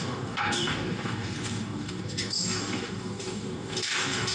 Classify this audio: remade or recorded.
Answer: remade